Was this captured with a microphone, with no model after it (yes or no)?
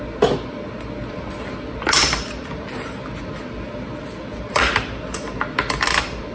yes